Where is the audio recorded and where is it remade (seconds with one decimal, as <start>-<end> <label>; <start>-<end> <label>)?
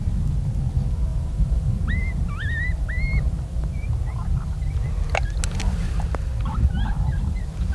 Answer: 0.0-1.1 recorded; 1.1-1.8 remade; 1.8-7.7 recorded